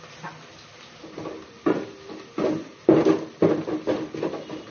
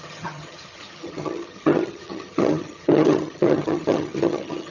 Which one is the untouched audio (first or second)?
first